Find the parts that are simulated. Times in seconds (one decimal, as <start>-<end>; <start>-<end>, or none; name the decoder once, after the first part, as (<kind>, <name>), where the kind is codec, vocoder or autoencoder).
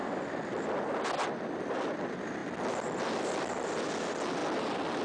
none